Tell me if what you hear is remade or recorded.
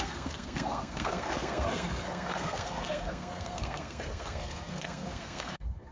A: remade